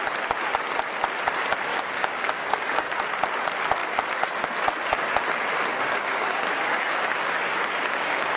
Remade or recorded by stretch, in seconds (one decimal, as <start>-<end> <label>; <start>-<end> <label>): 0.0-1.7 recorded; 1.7-3.0 remade; 3.0-5.7 recorded; 5.7-8.4 remade